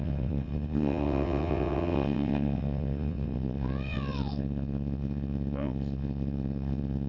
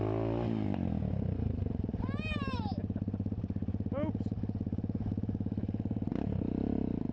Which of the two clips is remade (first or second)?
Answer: first